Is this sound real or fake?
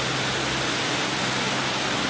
fake